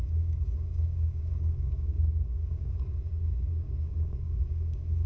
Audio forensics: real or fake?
fake